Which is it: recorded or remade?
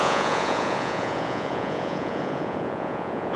remade